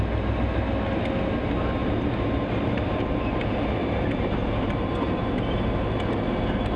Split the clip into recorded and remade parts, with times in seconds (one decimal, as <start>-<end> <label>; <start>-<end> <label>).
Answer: 0.0-1.8 recorded; 1.8-5.9 remade; 5.9-6.8 recorded